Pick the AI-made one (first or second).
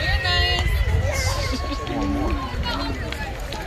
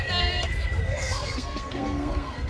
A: second